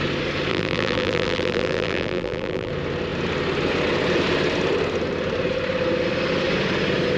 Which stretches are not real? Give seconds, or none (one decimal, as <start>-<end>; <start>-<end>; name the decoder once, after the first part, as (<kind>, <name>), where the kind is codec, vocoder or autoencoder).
0.5-2.7 (vocoder, BigVGAN v2)